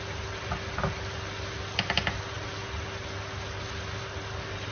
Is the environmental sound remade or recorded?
recorded